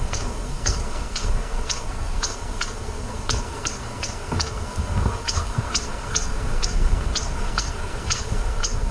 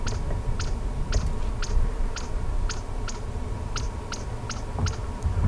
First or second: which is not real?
first